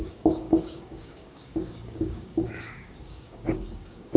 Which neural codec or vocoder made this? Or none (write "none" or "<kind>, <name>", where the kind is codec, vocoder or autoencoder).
codec, DAC